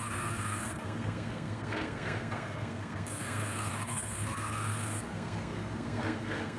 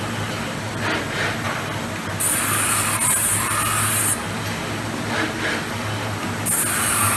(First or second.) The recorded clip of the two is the second